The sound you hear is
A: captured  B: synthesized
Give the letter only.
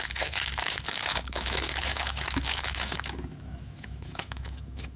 B